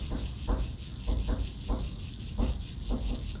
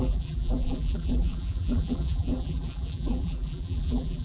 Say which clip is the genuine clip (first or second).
first